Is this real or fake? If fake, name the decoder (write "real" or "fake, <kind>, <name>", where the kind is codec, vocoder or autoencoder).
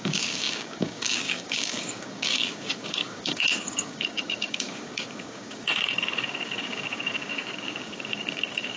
fake, codec, DAC